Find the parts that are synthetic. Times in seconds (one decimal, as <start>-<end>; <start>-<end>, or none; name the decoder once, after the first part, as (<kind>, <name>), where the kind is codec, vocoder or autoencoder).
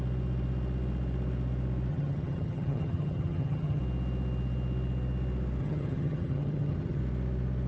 1.9-3.8 (vocoder, HiFi-GAN); 5.6-7.0